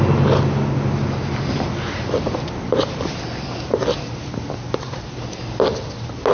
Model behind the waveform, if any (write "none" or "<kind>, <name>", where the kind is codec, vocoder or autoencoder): none